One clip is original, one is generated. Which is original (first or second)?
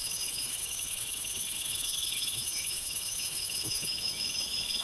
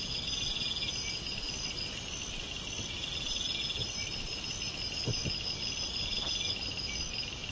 second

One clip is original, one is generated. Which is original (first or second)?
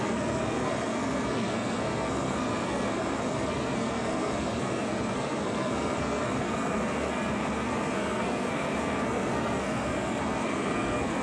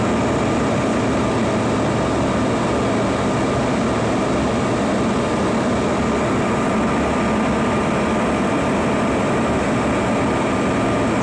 second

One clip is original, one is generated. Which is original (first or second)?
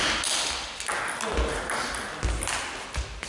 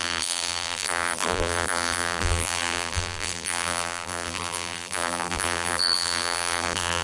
first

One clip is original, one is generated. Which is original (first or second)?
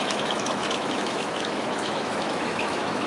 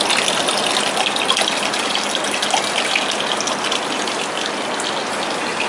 second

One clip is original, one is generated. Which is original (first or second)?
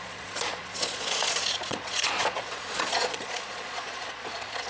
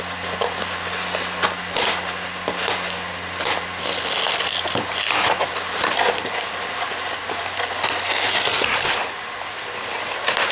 second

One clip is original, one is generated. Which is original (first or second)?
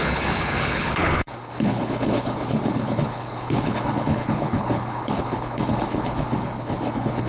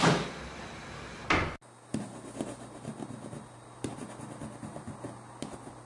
second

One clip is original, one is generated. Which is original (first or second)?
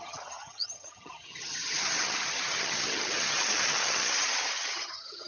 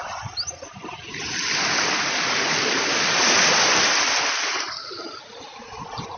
second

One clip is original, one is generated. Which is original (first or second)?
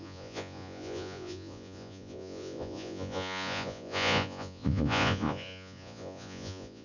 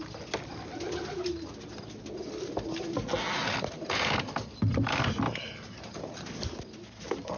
second